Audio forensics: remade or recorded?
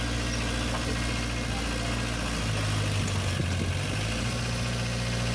recorded